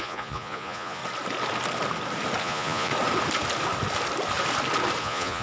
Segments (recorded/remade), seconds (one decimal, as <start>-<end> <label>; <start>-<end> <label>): 0.0-1.0 remade; 1.0-2.4 recorded; 2.4-2.9 remade; 2.9-5.0 recorded; 5.0-5.4 remade